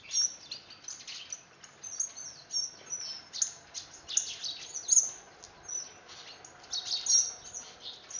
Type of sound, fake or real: real